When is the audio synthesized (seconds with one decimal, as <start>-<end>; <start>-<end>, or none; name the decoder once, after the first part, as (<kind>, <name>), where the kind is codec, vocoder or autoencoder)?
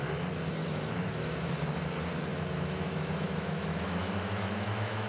0.6-1.5 (autoencoder, DAC-VAE); 2.3-5.1